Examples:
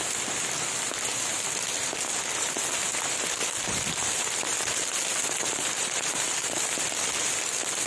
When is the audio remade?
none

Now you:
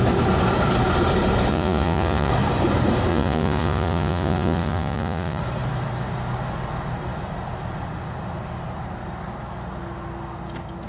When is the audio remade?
1.5-2.3 (vocoder, Vocos); 3.1-5.4

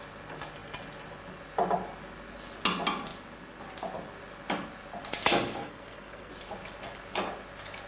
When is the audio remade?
5.6-6.3 (codec, SNAC)